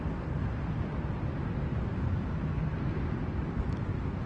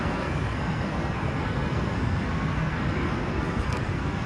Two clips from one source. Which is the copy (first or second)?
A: second